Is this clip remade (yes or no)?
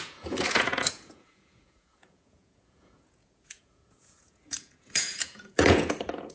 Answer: yes